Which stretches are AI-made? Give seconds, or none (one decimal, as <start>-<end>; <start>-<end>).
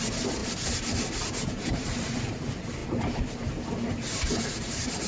none